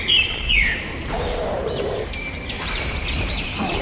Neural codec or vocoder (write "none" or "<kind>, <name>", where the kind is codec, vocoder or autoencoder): vocoder, BigVGAN v2